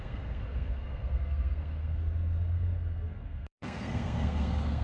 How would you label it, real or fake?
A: fake